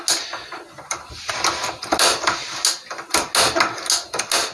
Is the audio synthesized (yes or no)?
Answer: no